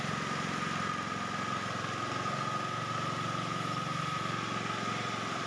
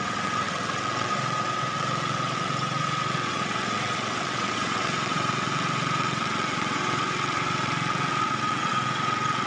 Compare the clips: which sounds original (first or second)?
first